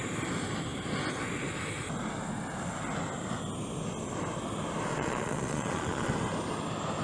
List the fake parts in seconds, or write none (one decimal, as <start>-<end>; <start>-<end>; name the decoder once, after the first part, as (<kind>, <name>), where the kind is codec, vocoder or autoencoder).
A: 4.9-6.1 (vocoder, Vocos)